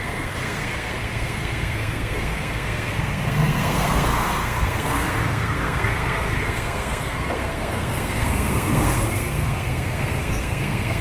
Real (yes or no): no